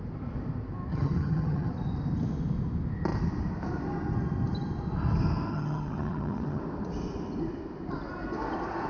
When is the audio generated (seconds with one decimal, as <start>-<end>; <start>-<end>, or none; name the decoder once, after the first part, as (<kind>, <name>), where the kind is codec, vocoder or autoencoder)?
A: 0.9-1.7 (vocoder, HiFi-GAN); 5.5-6.6